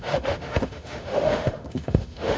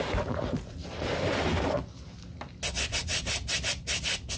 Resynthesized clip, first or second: first